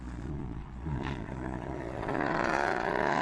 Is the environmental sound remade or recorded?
remade